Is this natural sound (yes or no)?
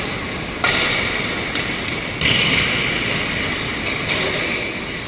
yes